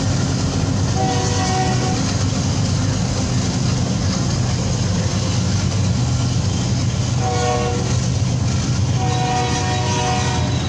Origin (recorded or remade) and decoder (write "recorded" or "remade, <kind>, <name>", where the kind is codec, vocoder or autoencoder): recorded